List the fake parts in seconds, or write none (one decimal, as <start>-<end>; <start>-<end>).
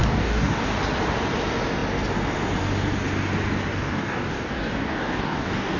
0.0-0.8; 3.7-5.8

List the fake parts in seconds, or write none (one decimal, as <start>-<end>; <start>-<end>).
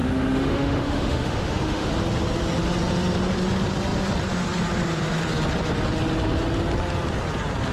0.0-1.9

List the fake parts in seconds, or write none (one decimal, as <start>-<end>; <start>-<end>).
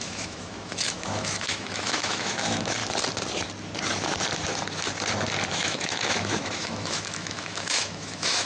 0.0-2.8; 5.5-8.5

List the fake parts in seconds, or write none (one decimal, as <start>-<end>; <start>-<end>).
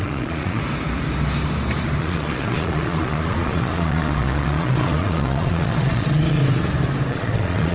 0.0-0.6; 2.0-6.4; 7.1-7.7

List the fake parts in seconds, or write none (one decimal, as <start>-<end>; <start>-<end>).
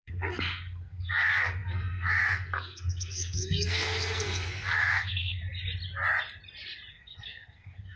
0.0-5.4; 6.9-8.0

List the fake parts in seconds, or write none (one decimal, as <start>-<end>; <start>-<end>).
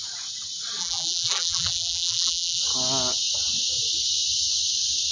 0.8-2.6